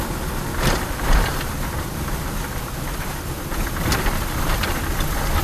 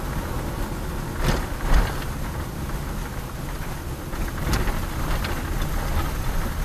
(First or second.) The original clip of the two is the second